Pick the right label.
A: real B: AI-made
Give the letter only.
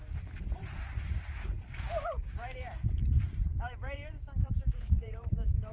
B